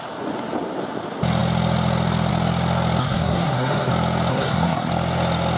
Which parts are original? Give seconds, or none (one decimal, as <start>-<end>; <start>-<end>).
0.0-3.0; 3.9-4.3; 4.9-5.6